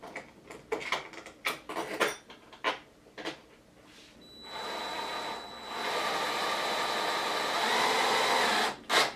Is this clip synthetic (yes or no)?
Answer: no